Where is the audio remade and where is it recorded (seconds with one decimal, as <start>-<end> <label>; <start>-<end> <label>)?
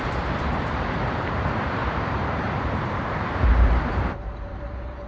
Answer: 0.0-5.1 remade